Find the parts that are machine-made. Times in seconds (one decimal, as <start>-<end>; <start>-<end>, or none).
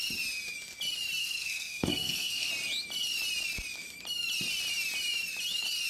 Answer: 1.2-2.5